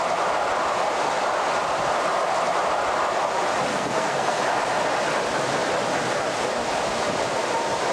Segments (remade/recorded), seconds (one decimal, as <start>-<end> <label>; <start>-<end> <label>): 0.0-3.7 recorded; 3.7-4.4 remade; 4.4-7.9 recorded